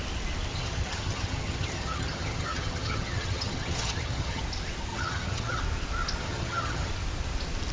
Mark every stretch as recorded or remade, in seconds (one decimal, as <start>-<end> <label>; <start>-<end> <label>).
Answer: 0.0-0.5 recorded; 0.5-4.4 remade; 4.4-4.9 recorded; 4.9-5.6 remade; 5.6-6.2 recorded; 6.2-6.9 remade; 6.9-7.7 recorded